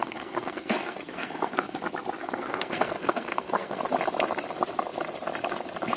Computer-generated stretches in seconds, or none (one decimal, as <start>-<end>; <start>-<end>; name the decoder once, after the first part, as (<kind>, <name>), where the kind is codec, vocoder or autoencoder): 0.0-1.8 (codec, SNAC); 2.2-3.8